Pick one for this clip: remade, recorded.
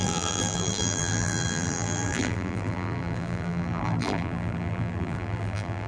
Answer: remade